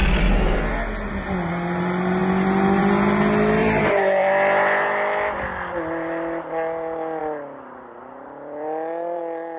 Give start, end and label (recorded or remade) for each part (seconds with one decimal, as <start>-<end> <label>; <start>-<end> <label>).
0.0-3.6 recorded; 3.6-4.3 remade; 4.3-7.2 recorded; 7.2-9.2 remade; 9.2-9.6 recorded

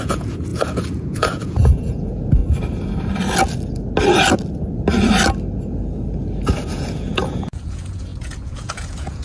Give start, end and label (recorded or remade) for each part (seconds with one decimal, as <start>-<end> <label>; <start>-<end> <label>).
0.0-2.4 remade; 2.4-6.7 recorded; 6.7-9.2 remade

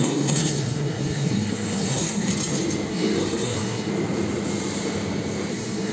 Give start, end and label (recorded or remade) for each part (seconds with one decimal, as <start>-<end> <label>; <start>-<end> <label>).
0.0-2.3 remade; 2.3-2.9 recorded; 2.9-3.9 remade; 3.9-5.5 recorded; 5.5-5.9 remade

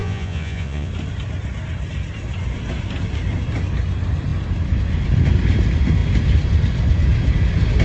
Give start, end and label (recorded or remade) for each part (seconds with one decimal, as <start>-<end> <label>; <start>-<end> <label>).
0.0-0.9 remade; 0.9-7.8 recorded

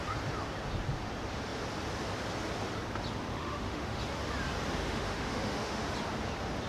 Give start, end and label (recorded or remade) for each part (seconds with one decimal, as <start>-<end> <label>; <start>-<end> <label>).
0.0-3.3 recorded; 3.3-4.0 remade; 4.0-4.8 recorded; 4.8-5.9 remade; 5.9-6.7 recorded

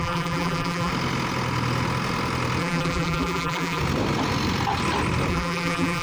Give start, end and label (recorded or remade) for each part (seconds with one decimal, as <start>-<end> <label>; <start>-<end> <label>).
0.0-0.9 remade; 0.9-2.6 recorded; 2.6-3.8 remade; 3.8-5.3 recorded; 5.3-6.0 remade

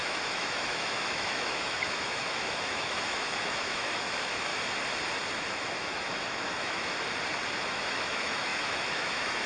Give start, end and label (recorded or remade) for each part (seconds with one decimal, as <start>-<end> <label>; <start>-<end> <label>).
0.0-4.5 remade; 4.5-5.6 recorded; 5.6-6.9 remade; 6.9-7.7 recorded; 7.7-9.5 remade

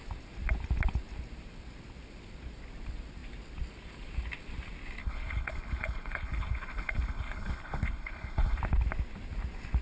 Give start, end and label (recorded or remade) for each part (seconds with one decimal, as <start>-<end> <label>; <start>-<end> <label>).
0.0-5.0 recorded; 5.0-8.6 remade; 8.6-9.8 recorded